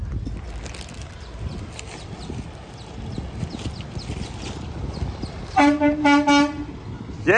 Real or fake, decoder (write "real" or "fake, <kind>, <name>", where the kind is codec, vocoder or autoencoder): real